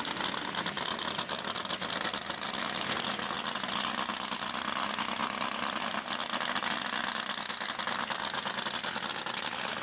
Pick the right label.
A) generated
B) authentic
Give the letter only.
B